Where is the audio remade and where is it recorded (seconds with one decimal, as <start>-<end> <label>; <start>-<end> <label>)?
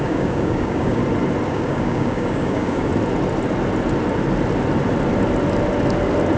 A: 0.0-1.0 remade; 1.0-1.5 recorded; 1.5-2.9 remade; 2.9-6.4 recorded